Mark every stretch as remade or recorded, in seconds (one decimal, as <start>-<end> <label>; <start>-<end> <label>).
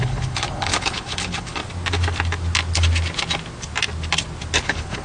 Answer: 0.0-1.6 remade; 1.6-4.6 recorded; 4.6-5.0 remade